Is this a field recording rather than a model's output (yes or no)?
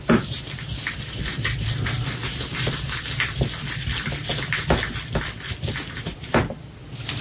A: yes